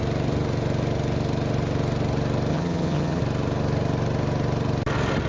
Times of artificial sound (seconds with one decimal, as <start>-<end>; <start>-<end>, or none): 2.5-3.2